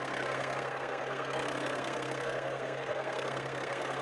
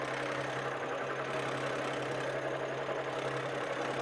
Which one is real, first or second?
second